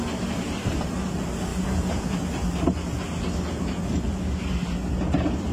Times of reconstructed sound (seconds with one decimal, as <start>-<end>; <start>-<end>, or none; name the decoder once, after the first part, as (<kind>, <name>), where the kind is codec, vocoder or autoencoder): none